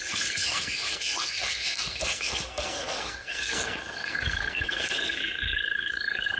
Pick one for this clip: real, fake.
fake